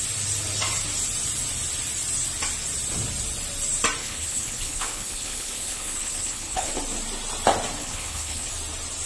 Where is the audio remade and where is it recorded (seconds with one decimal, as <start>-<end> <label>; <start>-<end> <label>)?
0.0-4.0 recorded; 4.0-6.7 remade; 6.7-7.8 recorded; 7.8-8.5 remade; 8.5-9.1 recorded